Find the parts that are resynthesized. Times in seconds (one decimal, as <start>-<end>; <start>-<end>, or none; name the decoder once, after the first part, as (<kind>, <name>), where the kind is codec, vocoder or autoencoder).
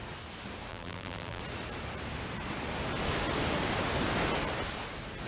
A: 0.7-1.4 (vocoder, BigVGAN v2)